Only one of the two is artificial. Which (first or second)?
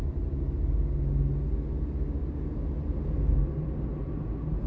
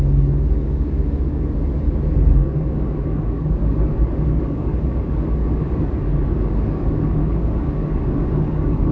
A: second